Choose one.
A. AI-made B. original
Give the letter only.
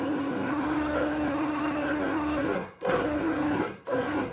A